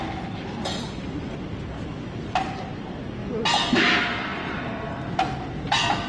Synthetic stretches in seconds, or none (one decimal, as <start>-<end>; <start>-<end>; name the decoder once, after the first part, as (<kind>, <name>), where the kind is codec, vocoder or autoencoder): none